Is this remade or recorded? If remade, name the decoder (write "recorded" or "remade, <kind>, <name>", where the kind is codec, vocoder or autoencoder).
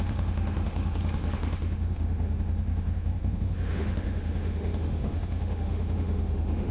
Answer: remade, autoencoder, DAC-VAE